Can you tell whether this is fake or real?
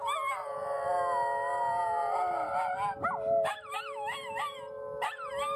real